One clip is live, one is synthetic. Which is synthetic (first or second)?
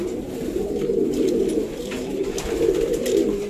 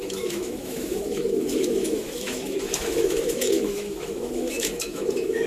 second